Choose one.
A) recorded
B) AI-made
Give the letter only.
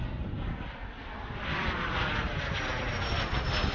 A